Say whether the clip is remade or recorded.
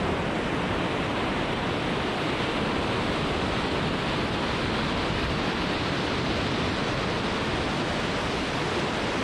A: recorded